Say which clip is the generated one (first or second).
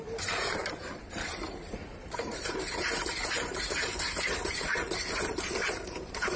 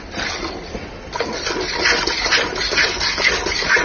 first